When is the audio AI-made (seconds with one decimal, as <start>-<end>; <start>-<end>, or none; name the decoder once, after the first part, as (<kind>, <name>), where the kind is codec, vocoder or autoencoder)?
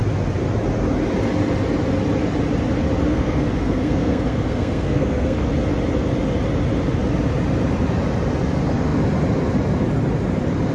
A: 3.1-5.4 (codec, SNAC)